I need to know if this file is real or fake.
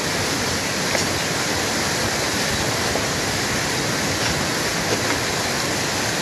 real